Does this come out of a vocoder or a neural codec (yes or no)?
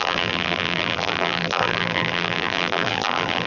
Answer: yes